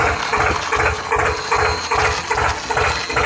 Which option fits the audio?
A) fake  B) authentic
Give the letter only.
B